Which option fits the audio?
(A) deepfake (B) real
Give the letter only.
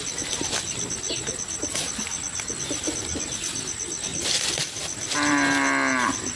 B